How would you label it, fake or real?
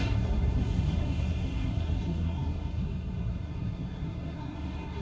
fake